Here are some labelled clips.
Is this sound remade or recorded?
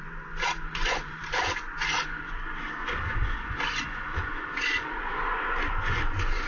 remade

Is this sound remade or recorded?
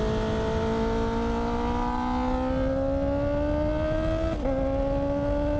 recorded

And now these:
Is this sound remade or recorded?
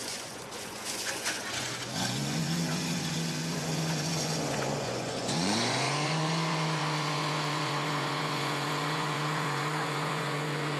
remade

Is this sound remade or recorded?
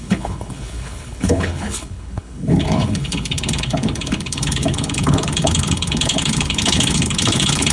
remade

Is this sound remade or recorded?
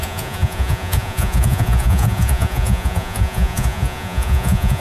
remade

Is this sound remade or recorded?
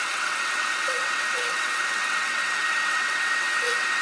remade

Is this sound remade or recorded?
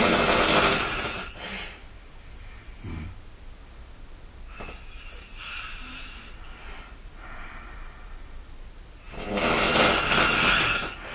recorded